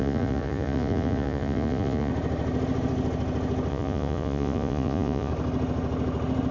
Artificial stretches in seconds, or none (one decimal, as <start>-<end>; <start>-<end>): 0.0-2.1; 3.7-5.3